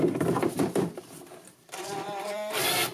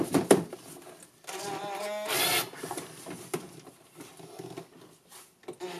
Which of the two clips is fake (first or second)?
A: first